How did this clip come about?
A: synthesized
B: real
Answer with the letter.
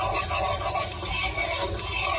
B